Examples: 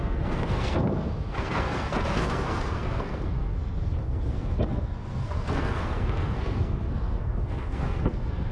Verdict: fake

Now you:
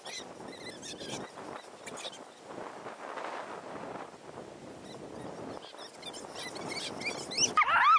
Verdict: real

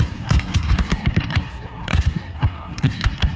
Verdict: fake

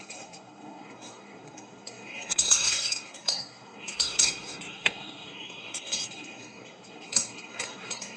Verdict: fake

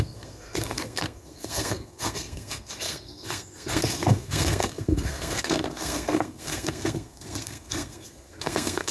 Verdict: fake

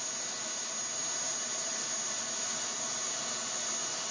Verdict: real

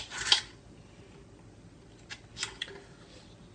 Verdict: real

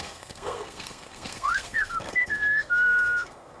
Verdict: fake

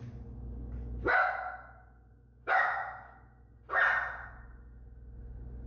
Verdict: real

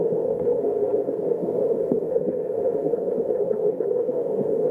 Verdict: fake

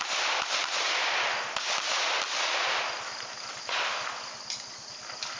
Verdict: real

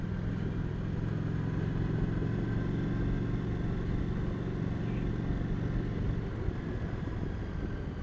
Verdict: real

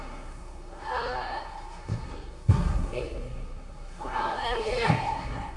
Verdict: fake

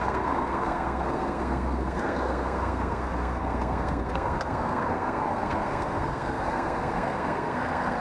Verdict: fake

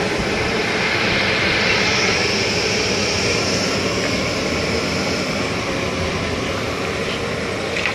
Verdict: real